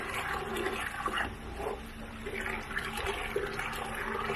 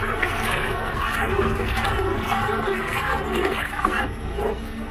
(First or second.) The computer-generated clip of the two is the second